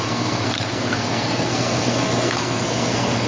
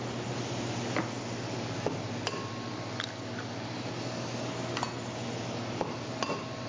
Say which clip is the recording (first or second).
second